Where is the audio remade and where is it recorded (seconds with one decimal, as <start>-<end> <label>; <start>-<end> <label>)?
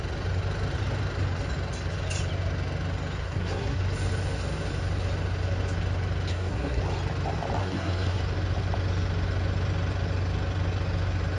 0.0-3.2 recorded; 3.2-3.8 remade; 3.8-6.3 recorded; 6.3-6.8 remade; 6.8-7.6 recorded; 7.6-8.2 remade; 8.2-11.4 recorded